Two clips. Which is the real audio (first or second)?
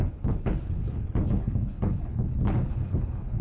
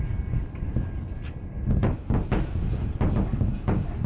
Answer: second